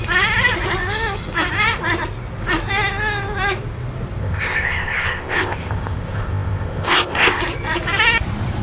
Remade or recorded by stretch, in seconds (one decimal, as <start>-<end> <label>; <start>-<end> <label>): 0.0-4.2 recorded; 4.2-7.4 remade; 7.4-8.6 recorded